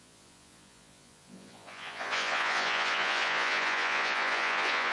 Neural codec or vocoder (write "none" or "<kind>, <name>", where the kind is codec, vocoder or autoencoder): vocoder, Vocos